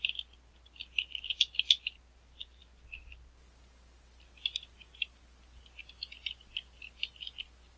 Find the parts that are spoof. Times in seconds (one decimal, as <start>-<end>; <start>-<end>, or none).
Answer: none